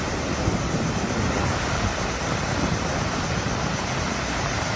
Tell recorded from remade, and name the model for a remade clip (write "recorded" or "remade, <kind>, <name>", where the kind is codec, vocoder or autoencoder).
remade, vocoder, BigVGAN v2